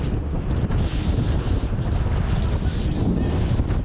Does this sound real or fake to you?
real